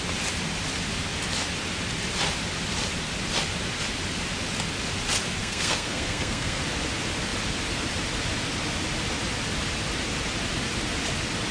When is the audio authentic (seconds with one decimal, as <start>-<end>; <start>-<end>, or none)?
0.0-5.4; 6.6-11.5